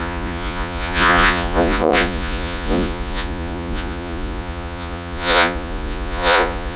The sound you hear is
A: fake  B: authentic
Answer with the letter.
A